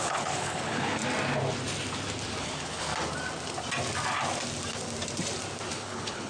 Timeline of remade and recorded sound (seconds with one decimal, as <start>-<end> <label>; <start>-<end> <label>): 0.0-1.0 remade; 1.0-2.4 recorded; 2.4-2.9 remade; 2.9-5.7 recorded; 5.7-6.3 remade